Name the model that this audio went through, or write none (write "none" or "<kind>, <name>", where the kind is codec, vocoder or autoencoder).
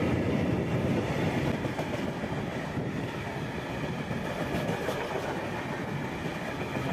none